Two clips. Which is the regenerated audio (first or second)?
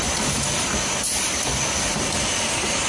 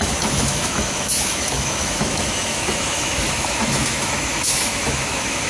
second